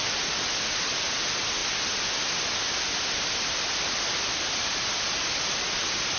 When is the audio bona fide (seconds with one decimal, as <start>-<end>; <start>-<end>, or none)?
0.0-6.2